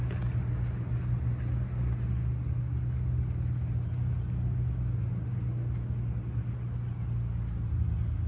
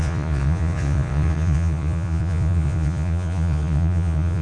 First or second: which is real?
first